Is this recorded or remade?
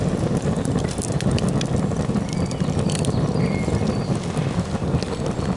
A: recorded